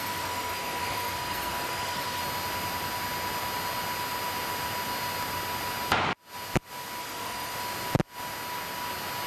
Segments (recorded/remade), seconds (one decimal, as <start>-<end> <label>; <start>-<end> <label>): 0.0-2.2 remade; 2.2-7.0 recorded; 7.0-7.5 remade; 7.5-9.3 recorded

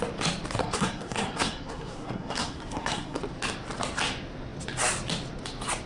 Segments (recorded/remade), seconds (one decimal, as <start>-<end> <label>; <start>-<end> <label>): 0.0-0.6 recorded; 0.6-3.2 remade; 3.2-5.9 recorded

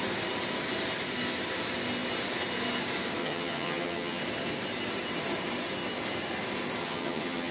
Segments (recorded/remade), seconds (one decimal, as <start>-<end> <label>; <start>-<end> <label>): 0.0-3.2 recorded; 3.2-4.2 remade; 4.2-6.8 recorded; 6.8-7.5 remade

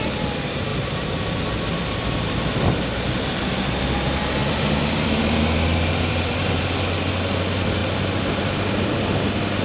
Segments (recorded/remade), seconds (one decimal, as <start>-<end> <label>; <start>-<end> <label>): 0.0-0.7 recorded; 0.7-3.6 remade; 3.6-4.4 recorded; 4.4-6.6 remade; 6.6-9.6 recorded

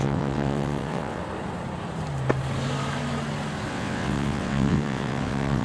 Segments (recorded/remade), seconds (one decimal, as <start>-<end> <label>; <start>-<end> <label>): 0.0-1.2 remade; 1.2-3.7 recorded; 3.7-5.6 remade

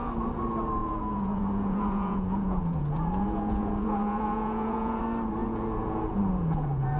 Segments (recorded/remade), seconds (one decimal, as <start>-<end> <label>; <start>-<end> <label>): 0.0-0.8 recorded; 0.8-5.0 remade; 5.0-5.4 recorded; 5.4-7.0 remade

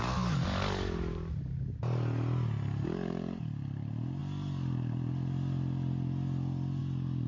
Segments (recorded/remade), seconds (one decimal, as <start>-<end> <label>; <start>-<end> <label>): 0.0-7.3 recorded

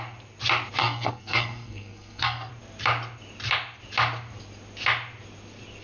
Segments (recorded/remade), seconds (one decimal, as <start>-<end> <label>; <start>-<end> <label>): 0.0-0.8 recorded; 0.8-2.5 remade; 2.5-5.8 recorded